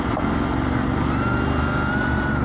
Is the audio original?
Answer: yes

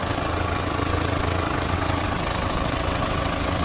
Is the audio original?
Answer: no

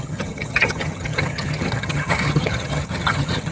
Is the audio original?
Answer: no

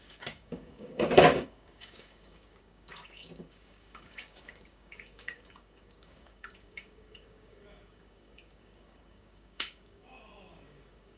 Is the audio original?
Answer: no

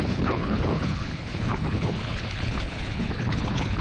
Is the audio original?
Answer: no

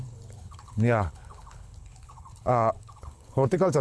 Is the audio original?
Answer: no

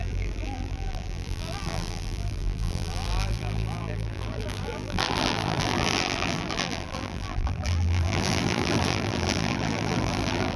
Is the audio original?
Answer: no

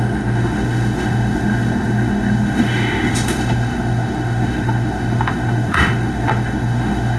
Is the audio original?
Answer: no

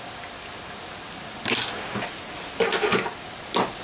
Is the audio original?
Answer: yes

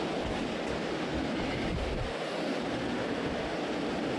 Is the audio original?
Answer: yes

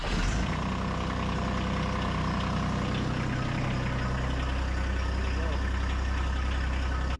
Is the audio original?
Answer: yes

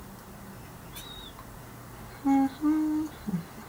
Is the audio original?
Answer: yes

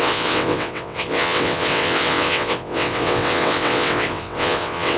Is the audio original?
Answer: no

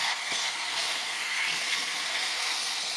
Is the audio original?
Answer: no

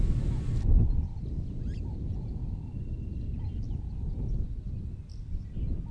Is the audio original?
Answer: yes